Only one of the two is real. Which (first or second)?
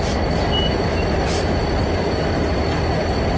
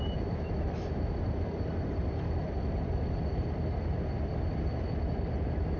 first